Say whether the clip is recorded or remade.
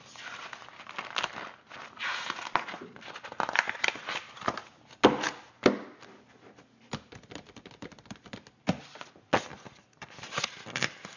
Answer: recorded